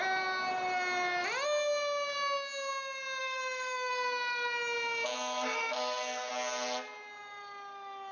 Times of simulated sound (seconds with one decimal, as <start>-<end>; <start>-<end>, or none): 3.2-3.9; 5.1-6.3